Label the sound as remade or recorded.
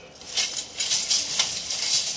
recorded